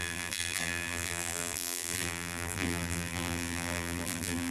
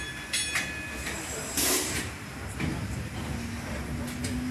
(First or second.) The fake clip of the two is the first